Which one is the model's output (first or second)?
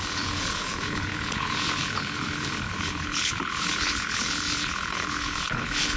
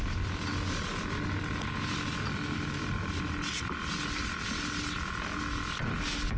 first